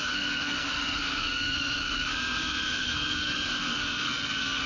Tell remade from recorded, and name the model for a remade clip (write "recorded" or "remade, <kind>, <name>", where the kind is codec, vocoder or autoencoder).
remade, codec, SNAC